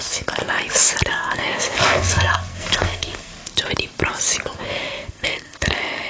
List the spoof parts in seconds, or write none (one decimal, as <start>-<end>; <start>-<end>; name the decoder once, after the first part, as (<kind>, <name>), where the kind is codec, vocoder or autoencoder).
0.0-0.4 (codec, SNAC); 1.1-3.3; 4.7-6.1